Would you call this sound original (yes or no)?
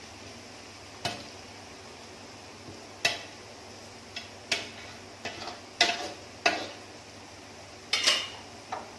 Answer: yes